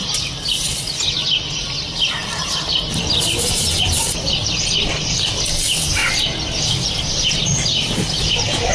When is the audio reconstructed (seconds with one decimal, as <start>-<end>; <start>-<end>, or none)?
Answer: 6.0-8.7